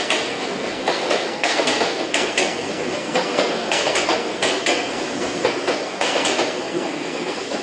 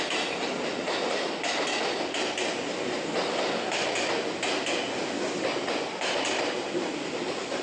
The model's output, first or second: first